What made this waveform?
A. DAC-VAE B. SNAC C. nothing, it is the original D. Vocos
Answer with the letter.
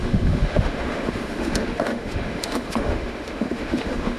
A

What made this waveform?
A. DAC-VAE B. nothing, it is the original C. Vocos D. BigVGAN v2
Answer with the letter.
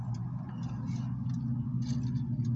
B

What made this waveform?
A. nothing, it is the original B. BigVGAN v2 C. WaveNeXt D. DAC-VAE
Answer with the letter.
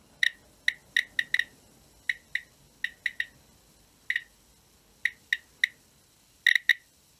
A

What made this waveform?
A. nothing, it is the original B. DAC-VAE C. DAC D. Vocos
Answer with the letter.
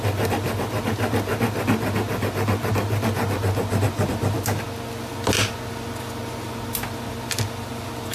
A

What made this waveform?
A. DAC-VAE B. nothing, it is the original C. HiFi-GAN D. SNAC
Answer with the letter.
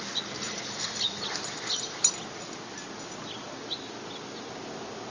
B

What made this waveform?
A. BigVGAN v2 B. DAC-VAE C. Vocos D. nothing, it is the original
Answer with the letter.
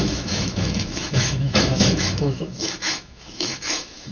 B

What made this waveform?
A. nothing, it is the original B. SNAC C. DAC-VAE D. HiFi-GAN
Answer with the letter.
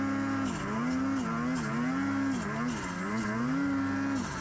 A